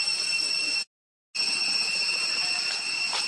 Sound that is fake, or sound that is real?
real